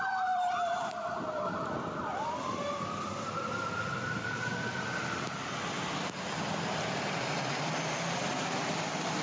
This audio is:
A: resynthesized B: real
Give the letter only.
A